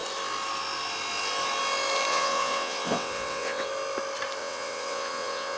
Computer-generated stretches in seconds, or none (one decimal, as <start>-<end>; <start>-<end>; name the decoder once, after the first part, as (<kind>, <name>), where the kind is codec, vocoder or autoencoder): 2.1-3.7 (vocoder, WaveNeXt); 4.4-5.6